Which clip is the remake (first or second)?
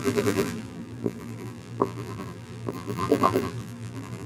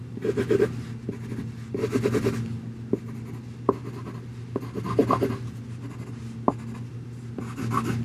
first